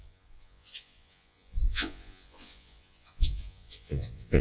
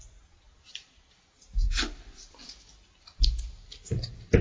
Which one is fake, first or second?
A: first